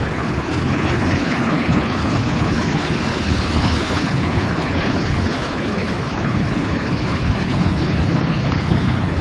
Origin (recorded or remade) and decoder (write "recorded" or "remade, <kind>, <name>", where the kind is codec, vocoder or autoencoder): remade, codec, HILCodec